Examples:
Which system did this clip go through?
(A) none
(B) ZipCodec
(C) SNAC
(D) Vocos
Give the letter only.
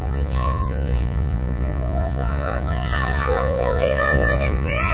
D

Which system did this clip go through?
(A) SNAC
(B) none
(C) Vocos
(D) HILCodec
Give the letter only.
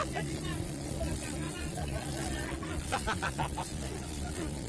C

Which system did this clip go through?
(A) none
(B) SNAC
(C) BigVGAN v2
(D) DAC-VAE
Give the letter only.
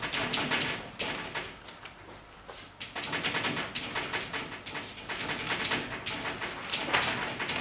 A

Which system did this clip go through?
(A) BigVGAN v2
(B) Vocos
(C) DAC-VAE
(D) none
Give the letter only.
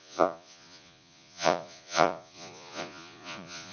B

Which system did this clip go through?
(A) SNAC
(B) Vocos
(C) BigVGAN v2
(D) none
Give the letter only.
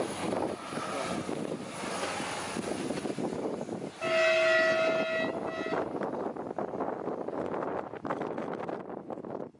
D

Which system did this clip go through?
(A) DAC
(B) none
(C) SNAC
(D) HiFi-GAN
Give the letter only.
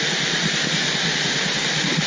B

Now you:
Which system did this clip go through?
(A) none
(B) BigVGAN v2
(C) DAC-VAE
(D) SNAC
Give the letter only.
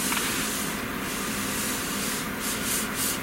A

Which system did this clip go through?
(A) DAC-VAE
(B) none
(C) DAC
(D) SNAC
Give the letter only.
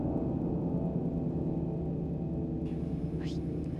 B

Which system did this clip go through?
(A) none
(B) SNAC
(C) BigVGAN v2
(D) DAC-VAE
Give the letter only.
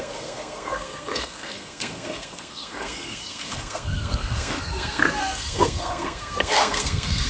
B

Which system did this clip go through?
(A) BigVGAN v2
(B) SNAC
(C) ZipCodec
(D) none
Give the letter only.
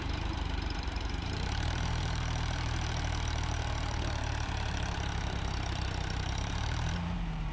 A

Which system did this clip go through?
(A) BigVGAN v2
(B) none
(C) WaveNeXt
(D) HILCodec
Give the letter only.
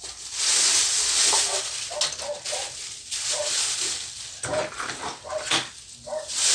B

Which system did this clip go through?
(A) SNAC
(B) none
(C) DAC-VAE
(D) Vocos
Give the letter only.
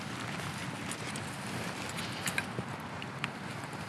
B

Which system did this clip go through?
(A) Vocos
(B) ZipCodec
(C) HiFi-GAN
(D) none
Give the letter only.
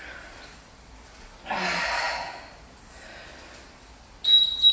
D